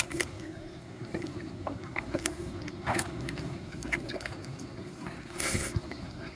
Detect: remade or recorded remade